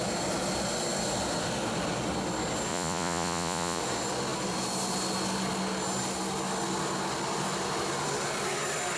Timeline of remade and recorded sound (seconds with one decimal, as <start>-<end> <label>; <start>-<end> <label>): 0.0-2.7 recorded; 2.7-3.8 remade; 3.8-9.0 recorded